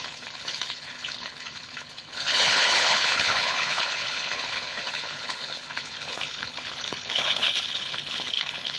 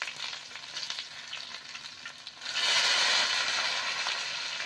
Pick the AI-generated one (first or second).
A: first